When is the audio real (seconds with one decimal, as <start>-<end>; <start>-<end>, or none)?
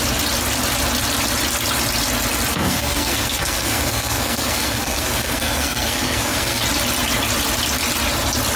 0.0-2.5; 6.6-8.6